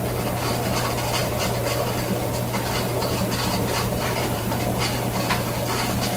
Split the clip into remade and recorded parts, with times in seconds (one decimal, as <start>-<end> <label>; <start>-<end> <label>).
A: 0.0-1.2 recorded; 1.2-1.8 remade; 1.8-2.9 recorded; 2.9-4.5 remade; 4.5-6.2 recorded